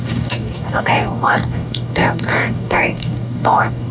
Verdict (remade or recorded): remade